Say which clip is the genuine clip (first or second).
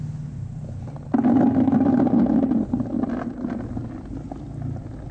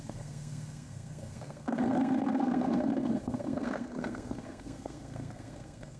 first